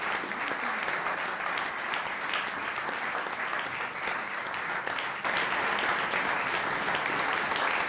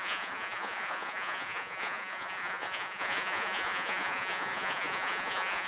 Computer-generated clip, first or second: second